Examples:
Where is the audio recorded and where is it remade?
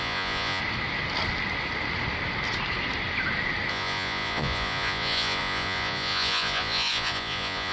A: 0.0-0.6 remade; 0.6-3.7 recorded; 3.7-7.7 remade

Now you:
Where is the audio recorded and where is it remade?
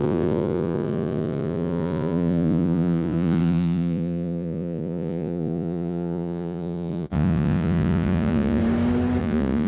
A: 0.0-8.6 remade; 8.6-9.2 recorded; 9.2-9.7 remade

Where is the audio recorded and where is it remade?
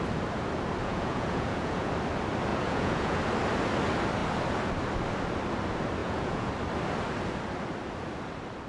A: 0.0-0.8 recorded; 0.8-1.9 remade; 1.9-2.5 recorded; 2.5-3.2 remade; 3.2-6.0 recorded; 6.0-6.5 remade; 6.5-8.7 recorded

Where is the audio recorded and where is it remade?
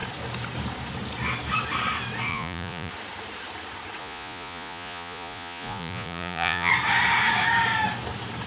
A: 0.0-2.3 recorded; 2.3-2.9 remade; 2.9-4.0 recorded; 4.0-6.7 remade; 6.7-8.5 recorded